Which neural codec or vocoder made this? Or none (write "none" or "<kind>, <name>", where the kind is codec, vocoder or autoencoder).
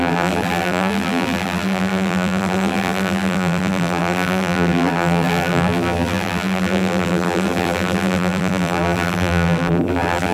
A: vocoder, BigVGAN v2